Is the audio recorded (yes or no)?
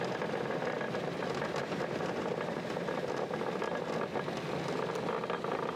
yes